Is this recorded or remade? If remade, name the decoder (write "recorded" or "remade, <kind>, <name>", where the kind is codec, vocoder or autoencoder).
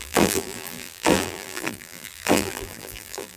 remade, vocoder, BigVGAN v2